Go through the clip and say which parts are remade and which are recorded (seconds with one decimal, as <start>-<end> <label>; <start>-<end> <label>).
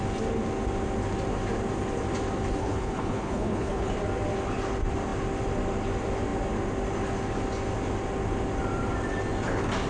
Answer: 0.0-2.6 recorded; 2.6-3.9 remade; 3.9-9.9 recorded